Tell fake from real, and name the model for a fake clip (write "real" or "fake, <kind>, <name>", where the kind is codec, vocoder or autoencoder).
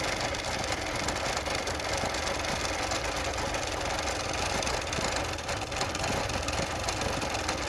real